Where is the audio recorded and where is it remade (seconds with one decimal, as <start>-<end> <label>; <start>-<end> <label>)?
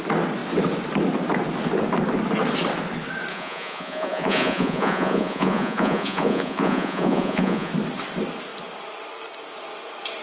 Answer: 0.0-3.3 recorded; 3.3-7.7 remade; 7.7-10.2 recorded